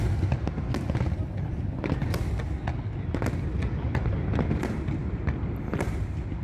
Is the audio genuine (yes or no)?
yes